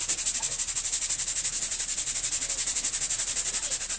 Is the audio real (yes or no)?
yes